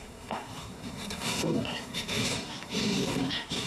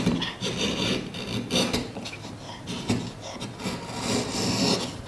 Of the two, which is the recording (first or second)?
second